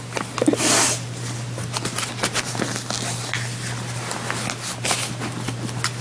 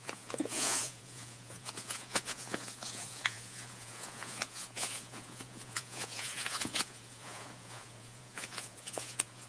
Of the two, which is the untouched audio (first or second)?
first